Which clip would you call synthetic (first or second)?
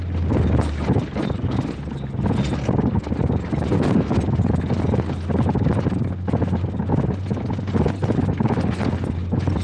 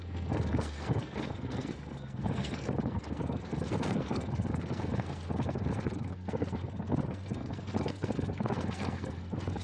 second